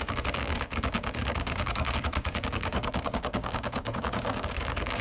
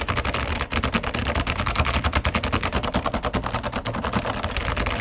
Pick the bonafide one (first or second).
second